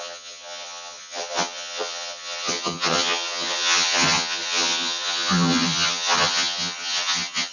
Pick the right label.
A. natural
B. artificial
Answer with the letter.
B